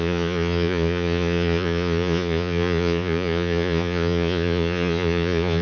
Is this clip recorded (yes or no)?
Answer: no